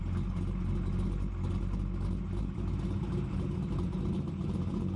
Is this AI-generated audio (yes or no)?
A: no